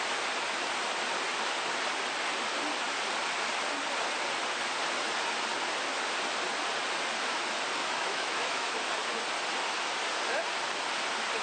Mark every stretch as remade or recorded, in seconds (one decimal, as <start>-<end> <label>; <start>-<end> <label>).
0.0-7.8 recorded; 7.8-8.7 remade; 8.7-11.4 recorded